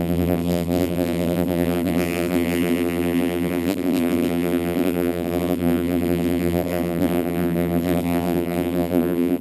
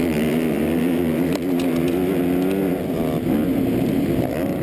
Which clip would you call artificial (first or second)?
first